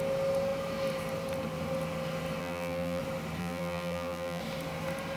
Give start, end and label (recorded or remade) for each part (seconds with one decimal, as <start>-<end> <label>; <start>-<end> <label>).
0.0-2.4 recorded; 2.4-3.0 remade; 3.0-3.4 recorded; 3.4-4.4 remade; 4.4-5.2 recorded